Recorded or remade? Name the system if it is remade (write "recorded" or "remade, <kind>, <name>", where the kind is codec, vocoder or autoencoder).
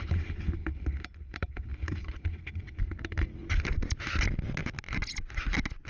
recorded